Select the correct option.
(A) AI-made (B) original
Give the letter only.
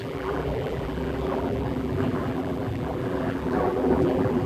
A